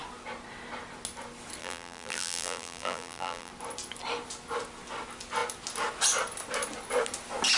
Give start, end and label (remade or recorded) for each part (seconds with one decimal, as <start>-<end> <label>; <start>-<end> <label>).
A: 0.0-1.6 recorded; 1.6-3.5 remade; 3.5-7.6 recorded